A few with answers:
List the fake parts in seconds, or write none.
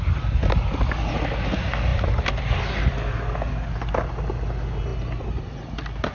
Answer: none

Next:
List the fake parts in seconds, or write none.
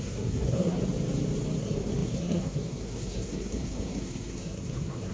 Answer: 0.0-0.8 (codec, SNAC); 1.6-5.1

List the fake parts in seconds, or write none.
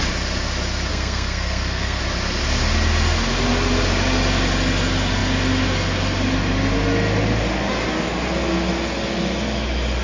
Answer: 0.9-2.0 (codec, SNAC)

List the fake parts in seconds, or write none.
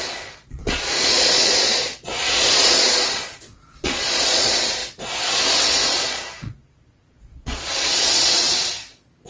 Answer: 0.0-4.8 (vocoder, Vocos); 5.6-9.3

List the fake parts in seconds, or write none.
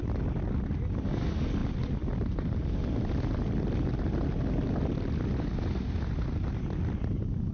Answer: 1.6-3.2 (vocoder, BigVGAN v2)